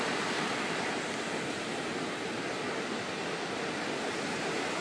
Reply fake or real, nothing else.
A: real